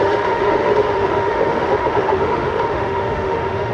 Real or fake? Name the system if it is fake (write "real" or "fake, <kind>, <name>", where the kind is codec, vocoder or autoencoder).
fake, autoencoder, DAC-VAE